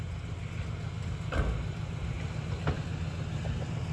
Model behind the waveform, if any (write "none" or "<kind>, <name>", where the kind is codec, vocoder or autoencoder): none